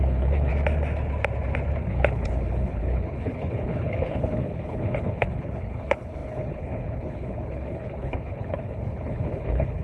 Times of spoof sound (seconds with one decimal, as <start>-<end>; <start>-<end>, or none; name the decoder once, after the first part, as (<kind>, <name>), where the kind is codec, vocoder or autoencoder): 0.0-0.5 (codec, HILCodec); 1.8-9.8